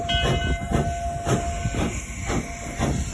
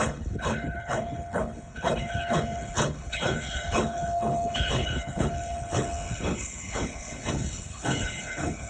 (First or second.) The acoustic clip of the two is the first